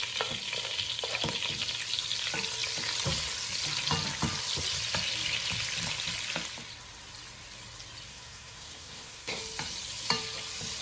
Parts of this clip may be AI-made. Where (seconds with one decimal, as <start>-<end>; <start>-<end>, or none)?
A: 8.1-9.4